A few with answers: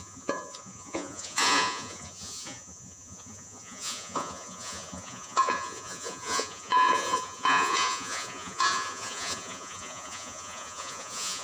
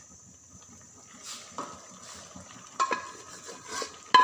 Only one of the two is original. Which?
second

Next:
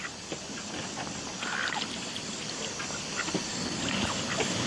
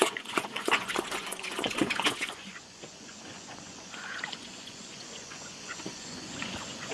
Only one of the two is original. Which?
first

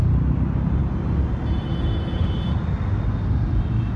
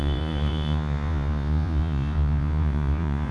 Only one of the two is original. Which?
first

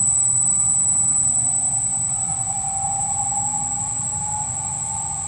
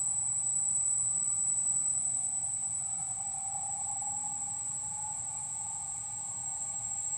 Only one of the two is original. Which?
first